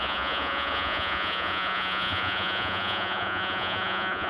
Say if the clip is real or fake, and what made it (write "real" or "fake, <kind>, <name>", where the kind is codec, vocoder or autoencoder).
fake, vocoder, Vocos